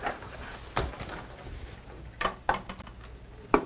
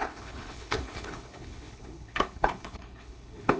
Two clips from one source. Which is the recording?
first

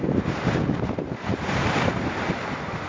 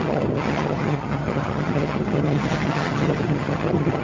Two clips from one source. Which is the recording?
first